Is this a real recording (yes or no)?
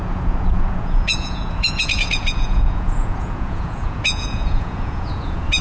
no